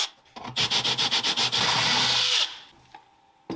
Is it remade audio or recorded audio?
recorded